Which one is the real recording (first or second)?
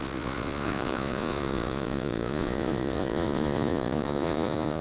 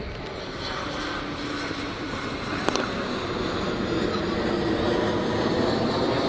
second